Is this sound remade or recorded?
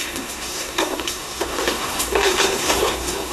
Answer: remade